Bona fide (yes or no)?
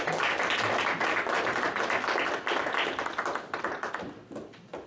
yes